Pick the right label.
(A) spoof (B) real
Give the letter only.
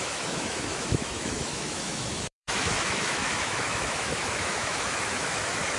A